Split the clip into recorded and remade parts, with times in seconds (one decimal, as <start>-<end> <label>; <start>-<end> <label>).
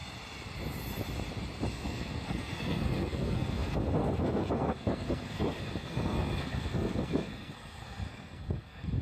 0.0-1.7 recorded; 1.7-9.0 remade